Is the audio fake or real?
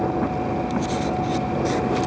real